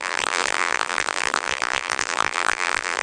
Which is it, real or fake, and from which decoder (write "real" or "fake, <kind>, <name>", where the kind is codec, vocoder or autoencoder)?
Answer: fake, vocoder, BigVGAN v2